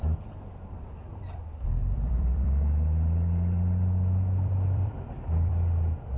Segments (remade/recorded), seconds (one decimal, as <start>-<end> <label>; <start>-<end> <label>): 0.0-1.8 recorded; 1.8-5.5 remade; 5.5-6.2 recorded

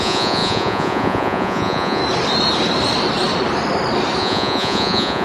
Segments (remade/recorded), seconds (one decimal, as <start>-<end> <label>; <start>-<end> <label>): 0.0-2.0 remade; 2.0-4.2 recorded; 4.2-5.2 remade

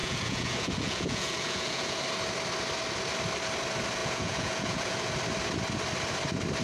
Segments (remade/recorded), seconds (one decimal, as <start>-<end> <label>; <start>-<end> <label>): 0.0-2.0 remade; 2.0-4.0 recorded; 4.0-5.1 remade; 5.1-6.6 recorded

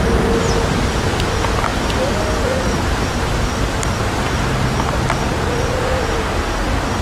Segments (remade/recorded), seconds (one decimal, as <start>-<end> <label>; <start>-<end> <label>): 0.0-7.0 recorded